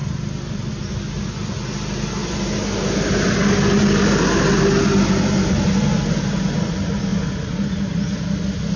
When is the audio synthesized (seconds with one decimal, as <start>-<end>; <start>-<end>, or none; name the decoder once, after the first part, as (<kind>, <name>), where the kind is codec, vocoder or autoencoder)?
none